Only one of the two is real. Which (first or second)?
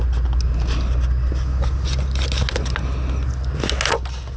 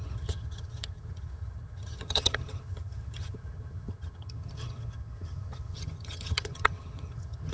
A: first